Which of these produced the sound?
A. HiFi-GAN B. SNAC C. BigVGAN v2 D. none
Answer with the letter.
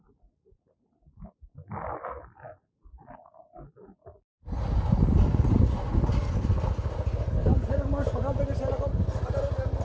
D